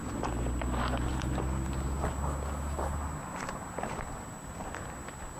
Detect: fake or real real